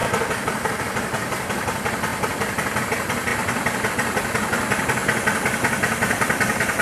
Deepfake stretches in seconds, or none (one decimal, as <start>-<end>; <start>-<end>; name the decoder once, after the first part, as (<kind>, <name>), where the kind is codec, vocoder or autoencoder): 0.0-0.8 (vocoder, BigVGAN v2); 3.3-3.9